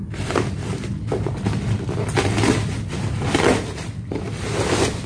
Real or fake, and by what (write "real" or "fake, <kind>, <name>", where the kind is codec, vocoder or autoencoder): real